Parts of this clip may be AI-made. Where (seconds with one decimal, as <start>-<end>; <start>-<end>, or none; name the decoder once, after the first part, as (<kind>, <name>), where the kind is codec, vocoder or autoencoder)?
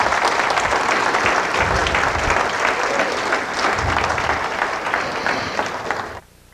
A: none